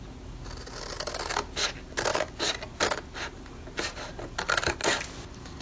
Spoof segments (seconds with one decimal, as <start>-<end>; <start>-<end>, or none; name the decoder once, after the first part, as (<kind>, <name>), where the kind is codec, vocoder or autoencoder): none